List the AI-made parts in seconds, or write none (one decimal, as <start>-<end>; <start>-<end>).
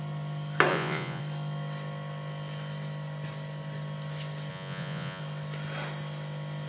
0.7-1.2; 4.5-5.2